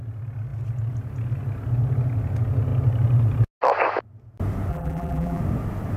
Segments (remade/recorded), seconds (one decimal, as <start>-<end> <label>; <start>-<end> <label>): 0.0-4.7 recorded; 4.7-5.4 remade; 5.4-6.0 recorded